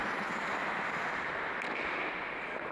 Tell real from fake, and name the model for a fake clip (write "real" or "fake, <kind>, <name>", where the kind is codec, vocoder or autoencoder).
real